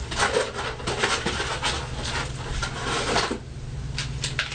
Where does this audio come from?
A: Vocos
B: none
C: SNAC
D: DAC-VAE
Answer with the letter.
B